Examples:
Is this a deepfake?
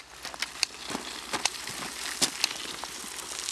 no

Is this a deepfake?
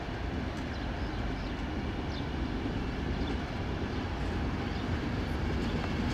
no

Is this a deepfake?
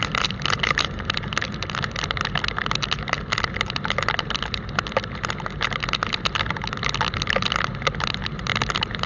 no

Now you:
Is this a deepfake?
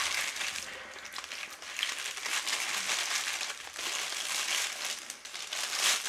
no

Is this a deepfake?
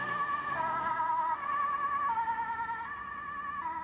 no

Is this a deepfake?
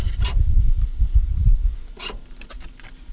no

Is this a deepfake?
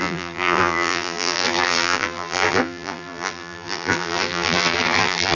yes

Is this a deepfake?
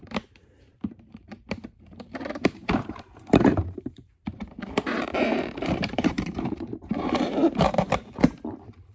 yes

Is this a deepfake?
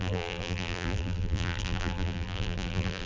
yes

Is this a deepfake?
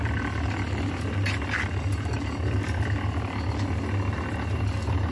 no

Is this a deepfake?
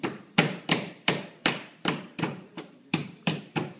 yes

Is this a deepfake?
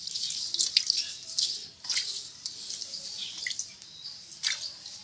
no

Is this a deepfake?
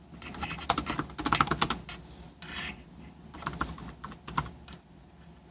no